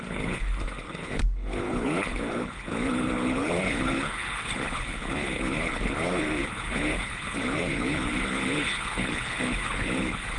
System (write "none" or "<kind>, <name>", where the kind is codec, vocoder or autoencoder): codec, HILCodec